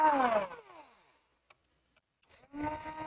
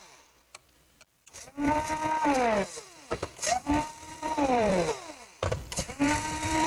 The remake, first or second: second